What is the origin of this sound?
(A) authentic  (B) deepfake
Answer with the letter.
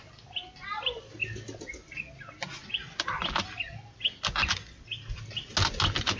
A